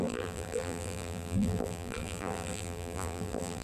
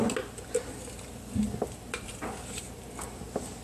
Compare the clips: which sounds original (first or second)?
second